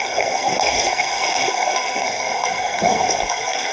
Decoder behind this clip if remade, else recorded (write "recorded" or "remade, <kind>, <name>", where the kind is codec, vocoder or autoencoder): remade, codec, SNAC